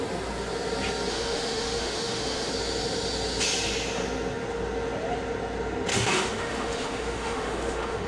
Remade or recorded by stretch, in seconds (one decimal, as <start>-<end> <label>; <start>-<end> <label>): 0.0-1.1 recorded; 1.1-2.5 remade; 2.5-5.9 recorded; 5.9-8.1 remade